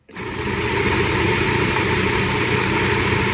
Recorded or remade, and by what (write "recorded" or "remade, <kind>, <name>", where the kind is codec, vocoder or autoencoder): remade, vocoder, BigVGAN v2